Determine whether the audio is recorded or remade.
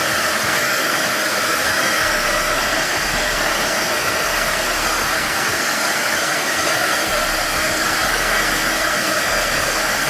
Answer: remade